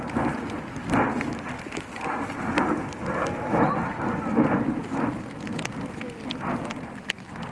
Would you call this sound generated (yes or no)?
no